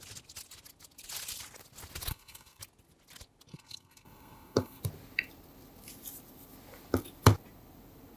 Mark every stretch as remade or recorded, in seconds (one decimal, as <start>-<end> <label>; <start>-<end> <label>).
0.0-2.1 recorded; 2.1-2.6 remade; 2.6-3.5 recorded; 3.5-4.8 remade; 4.8-8.2 recorded